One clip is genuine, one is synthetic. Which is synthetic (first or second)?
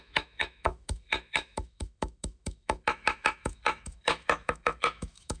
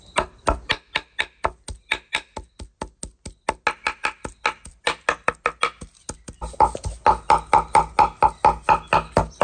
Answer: first